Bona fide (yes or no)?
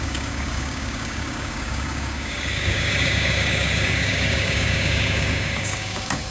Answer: no